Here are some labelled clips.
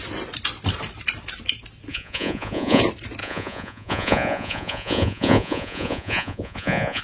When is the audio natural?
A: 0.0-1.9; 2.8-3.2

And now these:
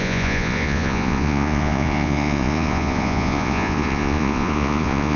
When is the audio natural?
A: none

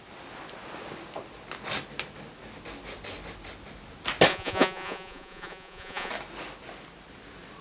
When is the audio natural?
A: 0.0-4.3; 6.1-7.6